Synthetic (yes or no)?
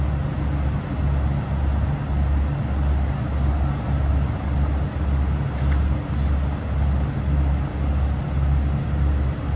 no